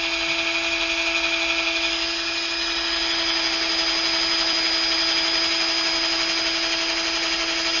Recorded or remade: recorded